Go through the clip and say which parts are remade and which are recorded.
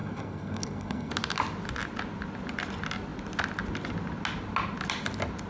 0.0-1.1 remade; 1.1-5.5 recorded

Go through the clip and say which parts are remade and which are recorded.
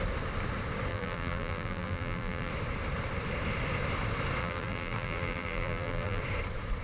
0.0-0.9 recorded; 0.9-2.5 remade; 2.5-4.4 recorded; 4.4-6.2 remade; 6.2-6.8 recorded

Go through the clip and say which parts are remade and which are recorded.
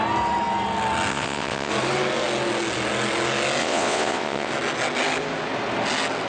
0.0-1.1 recorded; 1.1-1.7 remade; 1.7-3.6 recorded; 3.6-4.5 remade; 4.5-6.3 recorded